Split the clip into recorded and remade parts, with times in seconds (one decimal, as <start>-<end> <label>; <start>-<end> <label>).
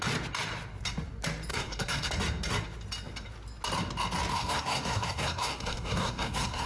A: 0.0-1.5 recorded; 1.5-2.1 remade; 2.1-4.3 recorded; 4.3-6.7 remade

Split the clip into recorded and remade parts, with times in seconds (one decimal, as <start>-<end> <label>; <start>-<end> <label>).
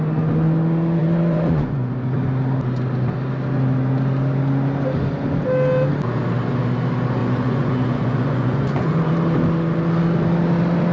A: 0.0-1.0 recorded; 1.0-1.9 remade; 1.9-7.2 recorded; 7.2-9.1 remade; 9.1-10.9 recorded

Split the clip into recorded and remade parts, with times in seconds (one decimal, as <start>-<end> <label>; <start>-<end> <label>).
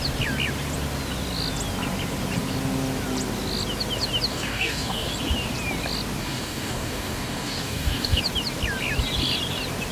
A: 0.0-4.3 recorded; 4.3-5.1 remade; 5.1-6.2 recorded; 6.2-8.2 remade; 8.2-9.9 recorded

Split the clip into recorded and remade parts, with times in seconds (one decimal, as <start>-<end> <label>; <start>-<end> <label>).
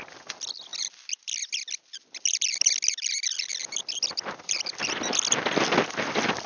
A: 0.0-6.5 recorded